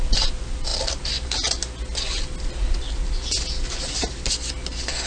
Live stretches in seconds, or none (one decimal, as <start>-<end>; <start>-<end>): 0.0-5.1